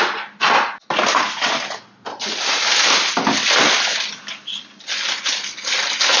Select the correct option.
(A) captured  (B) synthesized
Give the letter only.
A